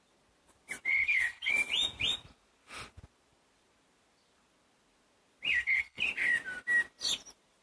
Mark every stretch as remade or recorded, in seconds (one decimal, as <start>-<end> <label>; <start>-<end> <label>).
0.0-0.9 recorded; 0.9-1.5 remade; 1.5-5.5 recorded; 5.5-6.0 remade; 6.0-7.6 recorded